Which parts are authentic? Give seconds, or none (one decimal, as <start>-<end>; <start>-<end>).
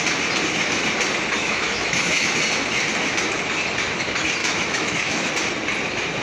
0.0-1.4; 2.4-4.4; 5.3-6.2